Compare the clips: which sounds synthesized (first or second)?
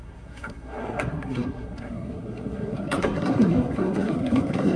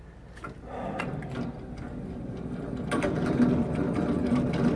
first